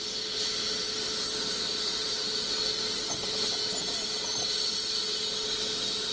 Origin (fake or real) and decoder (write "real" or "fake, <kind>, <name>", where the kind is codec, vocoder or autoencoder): real